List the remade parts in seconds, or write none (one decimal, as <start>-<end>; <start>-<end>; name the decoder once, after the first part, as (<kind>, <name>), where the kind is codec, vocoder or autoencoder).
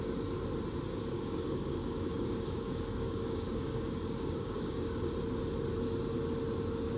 0.9-5.1 (codec, DAC)